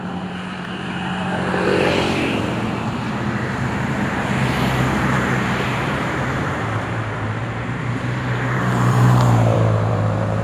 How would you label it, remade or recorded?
remade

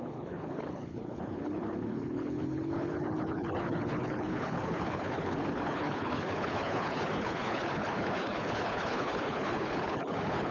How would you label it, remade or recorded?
remade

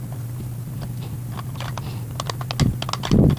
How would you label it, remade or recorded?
recorded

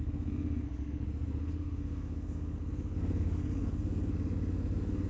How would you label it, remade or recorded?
remade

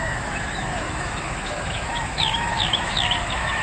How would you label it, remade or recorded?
remade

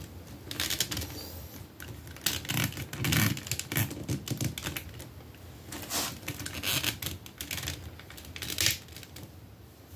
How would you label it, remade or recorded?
recorded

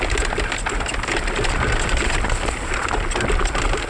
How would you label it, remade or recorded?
recorded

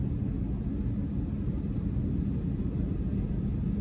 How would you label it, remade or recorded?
recorded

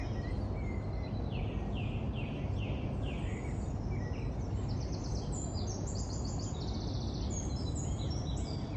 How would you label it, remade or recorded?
recorded